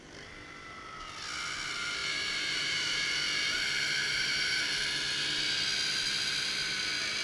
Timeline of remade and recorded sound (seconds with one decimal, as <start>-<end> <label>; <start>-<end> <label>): 0.0-2.0 recorded; 2.0-3.0 remade; 3.0-4.0 recorded; 4.0-4.7 remade; 4.7-7.2 recorded